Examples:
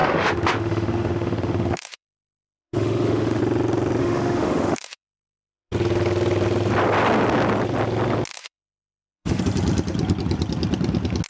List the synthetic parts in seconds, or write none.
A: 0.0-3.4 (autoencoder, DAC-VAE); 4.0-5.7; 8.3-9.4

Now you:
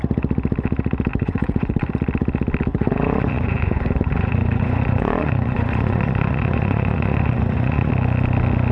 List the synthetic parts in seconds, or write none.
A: 1.1-1.9 (vocoder, Vocos); 2.7-7.9

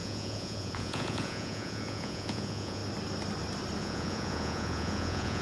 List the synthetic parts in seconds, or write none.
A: 0.0-2.8 (vocoder, Vocos); 3.8-5.4